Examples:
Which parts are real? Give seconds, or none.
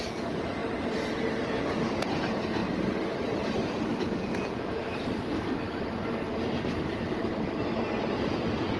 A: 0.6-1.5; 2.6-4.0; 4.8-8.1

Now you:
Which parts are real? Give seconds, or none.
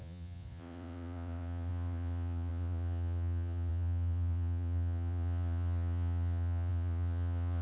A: none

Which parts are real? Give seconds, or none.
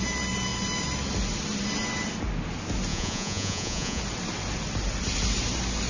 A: 0.0-2.9; 4.0-5.9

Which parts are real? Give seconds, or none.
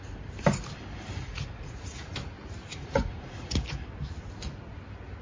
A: 0.0-1.2; 2.1-2.7; 3.5-5.2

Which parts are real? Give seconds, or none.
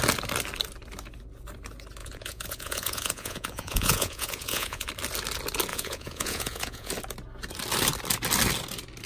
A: 0.0-2.0; 4.9-5.7; 6.9-9.1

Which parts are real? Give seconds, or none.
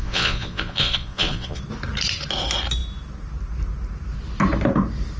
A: 1.6-5.2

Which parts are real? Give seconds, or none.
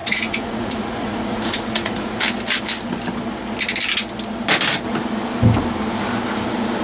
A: 2.2-6.8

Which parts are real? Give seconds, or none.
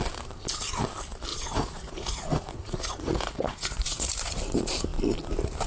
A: 0.0-1.3; 4.4-5.7